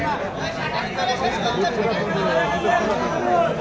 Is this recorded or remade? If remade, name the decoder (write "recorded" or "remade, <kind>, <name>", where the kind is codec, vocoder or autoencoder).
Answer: recorded